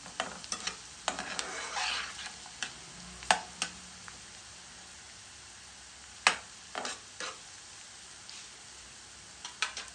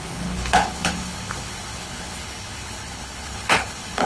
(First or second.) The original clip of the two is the first